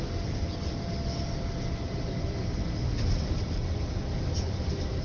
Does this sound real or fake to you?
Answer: real